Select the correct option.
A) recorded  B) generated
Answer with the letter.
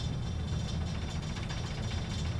A